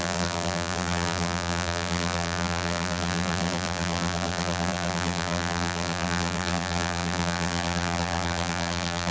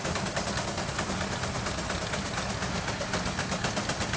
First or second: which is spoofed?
first